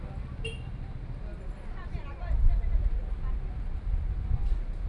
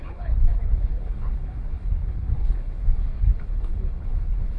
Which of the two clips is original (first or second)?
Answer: first